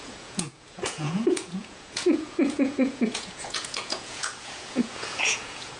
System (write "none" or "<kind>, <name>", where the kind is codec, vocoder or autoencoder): vocoder, Vocos